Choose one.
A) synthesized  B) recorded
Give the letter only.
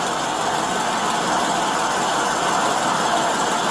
B